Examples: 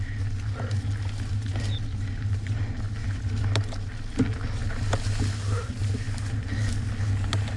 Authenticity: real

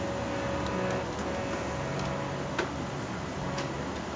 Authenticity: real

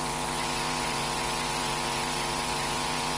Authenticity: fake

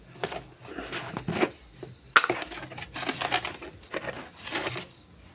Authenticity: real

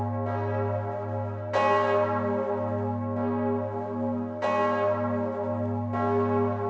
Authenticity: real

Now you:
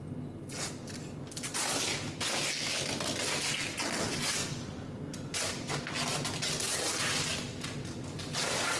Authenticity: real